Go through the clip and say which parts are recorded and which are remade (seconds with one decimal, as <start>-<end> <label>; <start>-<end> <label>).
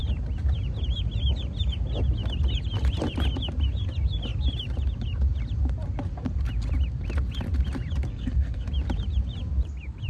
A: 0.0-8.1 recorded; 8.1-8.7 remade; 8.7-10.1 recorded